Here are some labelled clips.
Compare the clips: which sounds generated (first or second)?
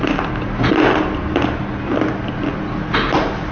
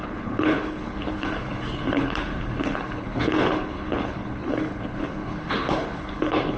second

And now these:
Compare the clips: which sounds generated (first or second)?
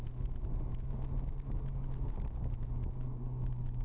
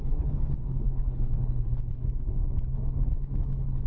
second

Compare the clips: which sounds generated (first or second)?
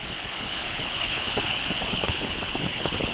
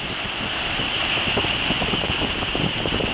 first